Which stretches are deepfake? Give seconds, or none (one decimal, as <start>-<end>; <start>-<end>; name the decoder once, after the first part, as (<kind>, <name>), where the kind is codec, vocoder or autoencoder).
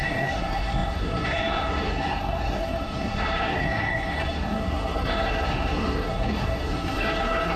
0.0-7.6 (codec, SNAC)